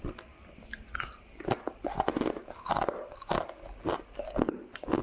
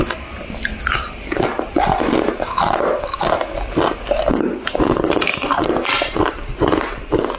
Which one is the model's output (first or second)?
second